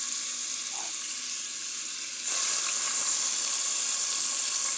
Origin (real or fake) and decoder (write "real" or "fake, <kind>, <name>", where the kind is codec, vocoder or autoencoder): real